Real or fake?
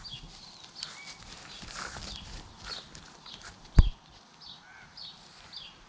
real